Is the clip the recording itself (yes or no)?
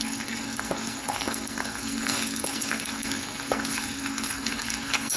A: no